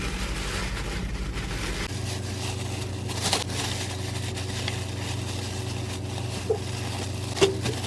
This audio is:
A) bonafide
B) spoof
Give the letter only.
A